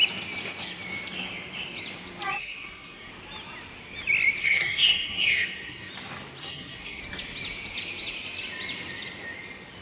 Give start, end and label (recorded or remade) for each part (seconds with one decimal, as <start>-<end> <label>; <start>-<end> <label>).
0.0-2.4 recorded; 2.4-3.1 remade; 3.1-4.4 recorded; 4.4-5.9 remade; 5.9-6.4 recorded; 6.4-7.0 remade; 7.0-9.8 recorded